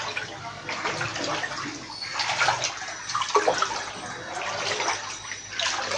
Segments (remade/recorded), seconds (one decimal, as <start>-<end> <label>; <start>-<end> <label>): 0.0-6.0 recorded